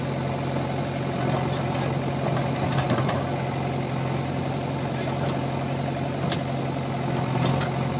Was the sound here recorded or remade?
recorded